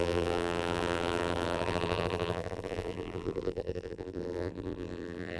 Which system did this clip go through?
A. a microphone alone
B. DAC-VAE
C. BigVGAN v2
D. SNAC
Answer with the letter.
C